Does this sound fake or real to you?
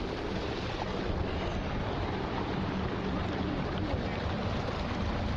real